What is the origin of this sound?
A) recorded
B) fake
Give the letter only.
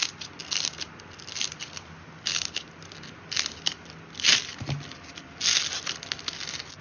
A